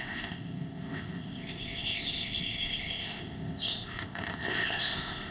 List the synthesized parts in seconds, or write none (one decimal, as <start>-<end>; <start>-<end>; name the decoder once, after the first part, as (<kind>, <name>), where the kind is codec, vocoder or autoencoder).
0.0-5.3 (codec, ZipCodec)